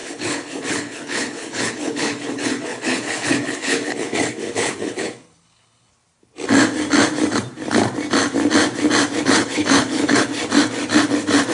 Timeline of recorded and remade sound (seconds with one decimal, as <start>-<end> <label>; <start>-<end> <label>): 0.0-5.9 remade; 5.9-9.2 recorded; 9.2-10.3 remade; 10.3-11.5 recorded